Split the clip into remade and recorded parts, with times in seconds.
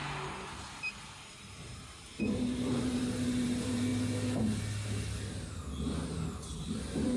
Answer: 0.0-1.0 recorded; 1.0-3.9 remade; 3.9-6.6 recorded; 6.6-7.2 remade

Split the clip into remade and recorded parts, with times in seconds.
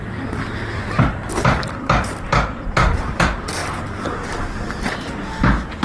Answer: 0.0-0.8 recorded; 0.8-3.6 remade; 3.6-5.8 recorded